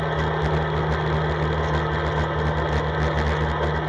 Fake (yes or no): no